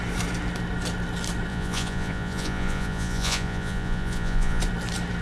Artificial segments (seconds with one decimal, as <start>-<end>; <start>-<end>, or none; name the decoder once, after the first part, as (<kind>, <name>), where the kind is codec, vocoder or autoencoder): 1.5-4.6 (vocoder, Vocos)